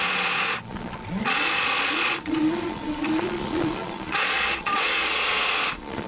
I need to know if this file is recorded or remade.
remade